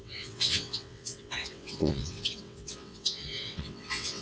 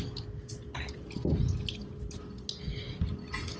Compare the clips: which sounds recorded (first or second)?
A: second